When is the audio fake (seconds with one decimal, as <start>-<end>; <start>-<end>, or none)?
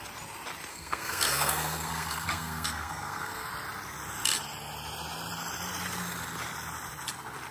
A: 0.7-3.5